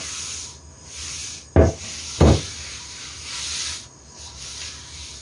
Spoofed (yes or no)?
no